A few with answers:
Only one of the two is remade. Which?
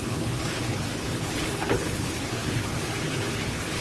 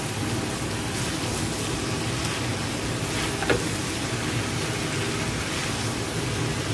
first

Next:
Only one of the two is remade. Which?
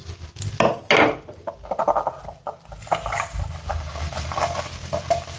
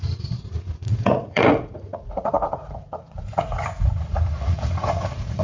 second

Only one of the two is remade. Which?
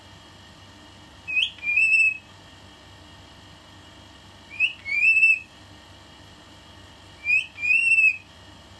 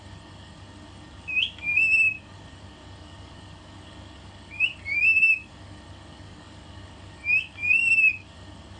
second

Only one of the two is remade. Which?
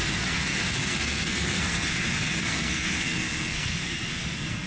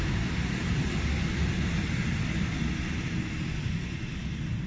first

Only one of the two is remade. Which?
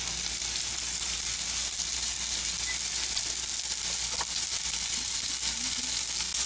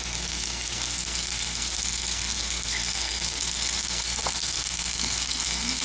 second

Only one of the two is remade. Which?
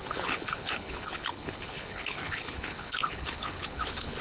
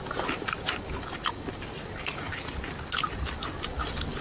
first